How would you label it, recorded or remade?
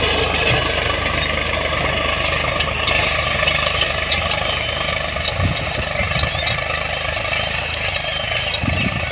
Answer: recorded